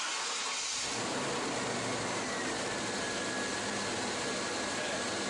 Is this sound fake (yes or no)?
no